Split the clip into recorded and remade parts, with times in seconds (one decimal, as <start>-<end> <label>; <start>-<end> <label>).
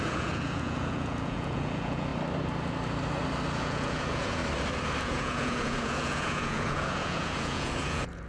0.0-2.1 remade; 2.1-3.6 recorded; 3.6-4.4 remade; 4.4-5.0 recorded; 5.0-8.3 remade